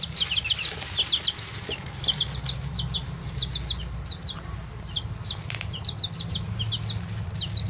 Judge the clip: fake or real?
real